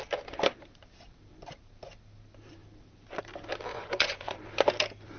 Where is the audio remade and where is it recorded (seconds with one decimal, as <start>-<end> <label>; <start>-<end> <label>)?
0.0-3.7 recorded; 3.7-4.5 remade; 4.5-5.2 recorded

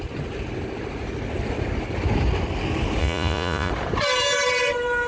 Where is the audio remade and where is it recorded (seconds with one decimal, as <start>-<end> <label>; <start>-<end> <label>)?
0.0-3.0 recorded; 3.0-3.7 remade; 3.7-5.1 recorded

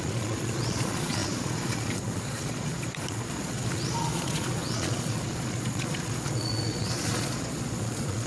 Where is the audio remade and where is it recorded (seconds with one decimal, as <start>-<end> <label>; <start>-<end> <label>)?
0.0-8.3 remade

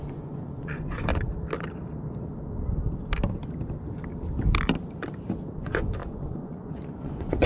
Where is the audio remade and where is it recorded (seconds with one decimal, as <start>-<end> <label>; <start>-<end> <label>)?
0.0-1.1 remade; 1.1-5.6 recorded; 5.6-7.5 remade

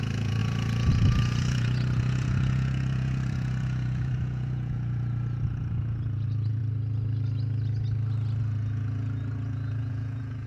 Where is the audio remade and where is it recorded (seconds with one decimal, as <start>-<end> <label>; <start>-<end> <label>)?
0.0-6.6 remade; 6.6-8.4 recorded; 8.4-10.5 remade

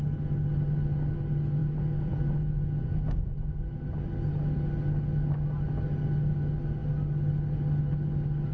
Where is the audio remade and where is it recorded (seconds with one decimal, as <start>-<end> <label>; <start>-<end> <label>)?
0.0-1.6 recorded; 1.6-3.5 remade; 3.5-8.5 recorded

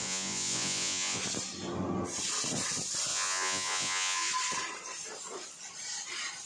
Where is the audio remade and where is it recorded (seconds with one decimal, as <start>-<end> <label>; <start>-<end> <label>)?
0.0-1.2 remade; 1.2-3.1 recorded; 3.1-4.3 remade; 4.3-6.5 recorded